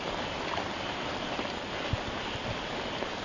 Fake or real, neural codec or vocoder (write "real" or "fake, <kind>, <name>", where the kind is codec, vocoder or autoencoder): real